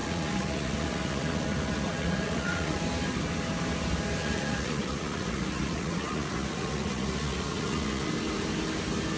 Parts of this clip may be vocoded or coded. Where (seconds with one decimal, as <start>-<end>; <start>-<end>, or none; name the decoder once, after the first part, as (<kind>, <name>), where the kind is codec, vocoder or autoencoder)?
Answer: 0.0-2.8 (vocoder, Vocos); 4.2-8.1